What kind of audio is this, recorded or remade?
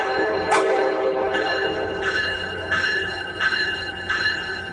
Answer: remade